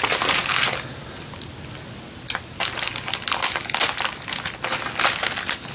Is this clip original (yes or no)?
yes